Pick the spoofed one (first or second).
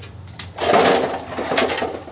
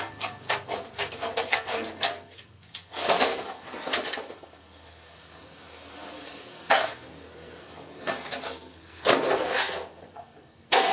second